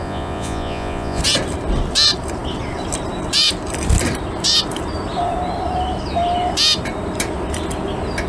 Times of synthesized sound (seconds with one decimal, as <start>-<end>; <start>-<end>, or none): 0.0-1.2